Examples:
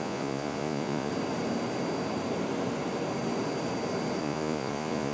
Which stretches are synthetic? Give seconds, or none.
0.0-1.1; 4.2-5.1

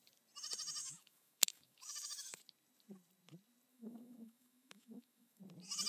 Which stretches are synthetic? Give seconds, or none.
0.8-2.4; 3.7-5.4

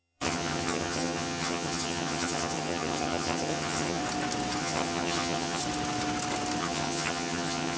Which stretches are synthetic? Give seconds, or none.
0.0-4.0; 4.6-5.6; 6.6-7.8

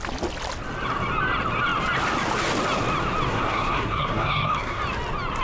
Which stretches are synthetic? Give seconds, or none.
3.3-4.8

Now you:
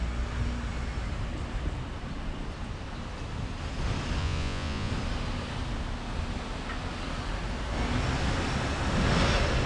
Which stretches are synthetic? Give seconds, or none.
4.2-4.9

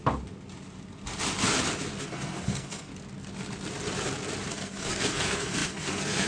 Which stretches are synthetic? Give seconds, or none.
2.0-2.9; 4.5-6.3

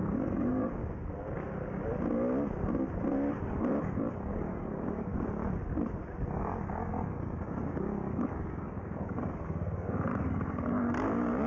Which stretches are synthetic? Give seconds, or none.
0.0-0.8; 3.8-5.1; 6.3-11.5

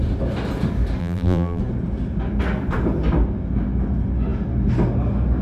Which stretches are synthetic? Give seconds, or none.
1.0-1.6